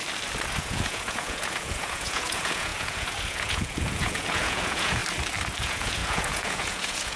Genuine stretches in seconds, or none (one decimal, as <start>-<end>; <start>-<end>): 0.0-0.6; 5.0-5.6